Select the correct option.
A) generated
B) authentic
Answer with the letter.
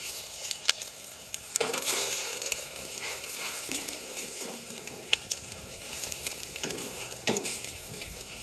A